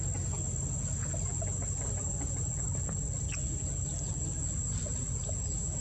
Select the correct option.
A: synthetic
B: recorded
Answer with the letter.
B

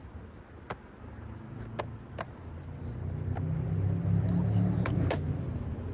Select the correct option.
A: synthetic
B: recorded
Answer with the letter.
B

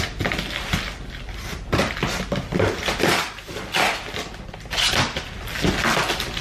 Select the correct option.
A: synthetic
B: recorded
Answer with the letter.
B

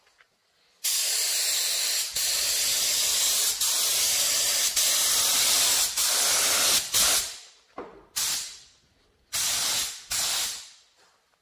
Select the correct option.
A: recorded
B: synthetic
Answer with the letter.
A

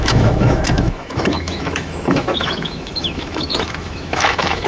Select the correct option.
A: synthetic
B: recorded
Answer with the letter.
A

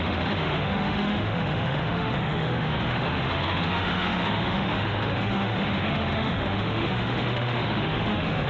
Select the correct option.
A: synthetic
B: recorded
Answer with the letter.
A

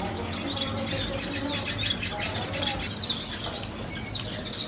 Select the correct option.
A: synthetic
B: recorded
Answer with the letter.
B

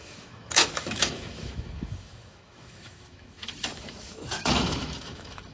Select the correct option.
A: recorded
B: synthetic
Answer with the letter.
B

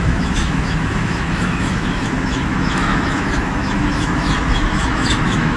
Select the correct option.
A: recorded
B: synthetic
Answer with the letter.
B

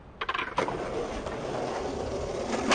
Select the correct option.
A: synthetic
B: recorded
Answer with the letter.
B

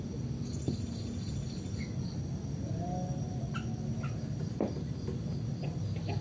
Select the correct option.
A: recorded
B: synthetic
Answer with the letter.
A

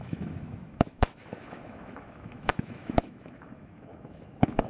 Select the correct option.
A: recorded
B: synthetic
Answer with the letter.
B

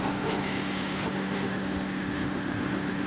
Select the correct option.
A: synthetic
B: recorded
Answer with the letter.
A